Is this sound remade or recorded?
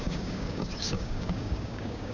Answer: remade